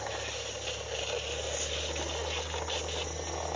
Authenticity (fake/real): real